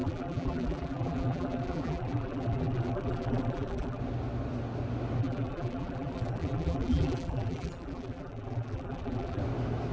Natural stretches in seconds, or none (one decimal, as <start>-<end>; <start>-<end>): 4.0-5.2; 9.4-9.9